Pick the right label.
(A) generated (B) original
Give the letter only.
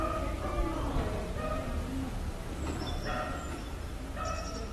B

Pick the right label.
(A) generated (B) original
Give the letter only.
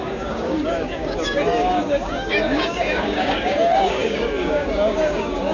A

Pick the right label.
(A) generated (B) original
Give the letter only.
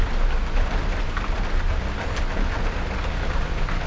B